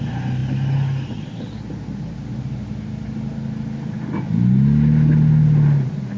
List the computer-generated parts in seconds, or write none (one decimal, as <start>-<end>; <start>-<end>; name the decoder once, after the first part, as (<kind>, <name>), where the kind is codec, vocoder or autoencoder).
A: none